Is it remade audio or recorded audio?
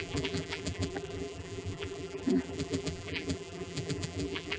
remade